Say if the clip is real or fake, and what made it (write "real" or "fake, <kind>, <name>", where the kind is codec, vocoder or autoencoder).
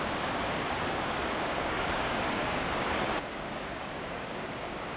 fake, codec, DAC